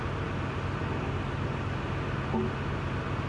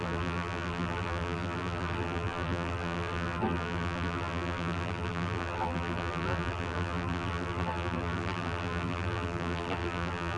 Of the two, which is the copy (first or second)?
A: second